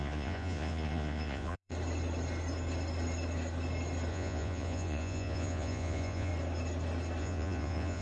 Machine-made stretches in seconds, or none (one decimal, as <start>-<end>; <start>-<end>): 0.0-1.7; 4.1-6.3; 7.2-8.0